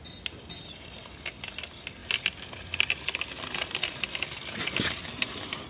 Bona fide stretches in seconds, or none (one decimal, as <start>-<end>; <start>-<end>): 0.0-5.7